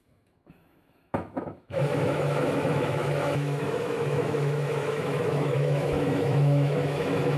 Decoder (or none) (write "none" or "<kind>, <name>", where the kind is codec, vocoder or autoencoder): autoencoder, DAC-VAE